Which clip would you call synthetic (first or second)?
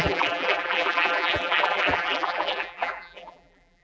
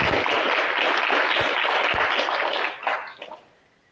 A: first